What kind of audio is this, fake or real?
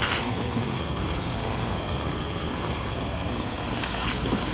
fake